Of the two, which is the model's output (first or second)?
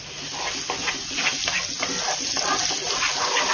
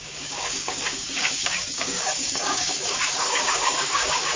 second